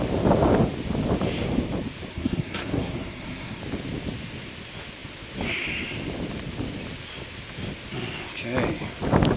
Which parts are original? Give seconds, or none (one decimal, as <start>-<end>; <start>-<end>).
0.0-2.1; 3.6-9.4